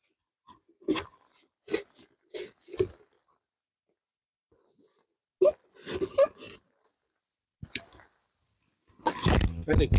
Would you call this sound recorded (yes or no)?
yes